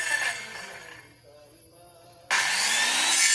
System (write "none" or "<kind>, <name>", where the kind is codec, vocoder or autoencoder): none